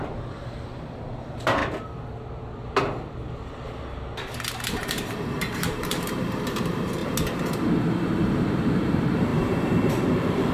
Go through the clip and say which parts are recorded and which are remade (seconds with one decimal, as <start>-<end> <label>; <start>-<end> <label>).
0.0-1.6 remade; 1.6-4.5 recorded; 4.5-7.0 remade; 7.0-7.8 recorded; 7.8-10.5 remade